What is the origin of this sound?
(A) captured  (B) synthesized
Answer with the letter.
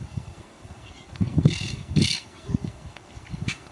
B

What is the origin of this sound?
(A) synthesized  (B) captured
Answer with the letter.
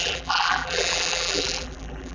A